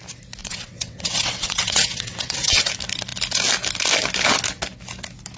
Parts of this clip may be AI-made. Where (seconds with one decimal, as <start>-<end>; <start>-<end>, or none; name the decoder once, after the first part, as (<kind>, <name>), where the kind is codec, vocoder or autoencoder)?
0.4-2.7 (vocoder, WaveNeXt)